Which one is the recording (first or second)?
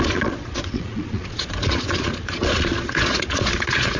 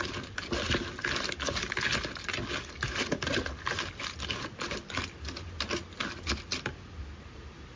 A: second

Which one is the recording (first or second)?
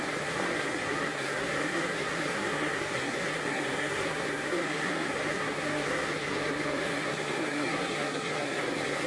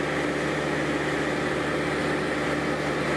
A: second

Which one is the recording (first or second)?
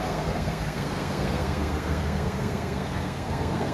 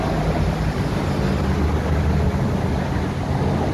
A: second